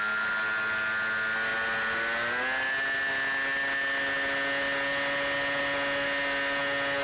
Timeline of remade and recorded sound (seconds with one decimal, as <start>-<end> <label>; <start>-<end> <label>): 0.0-7.0 recorded